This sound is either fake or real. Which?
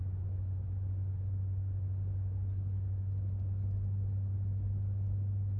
real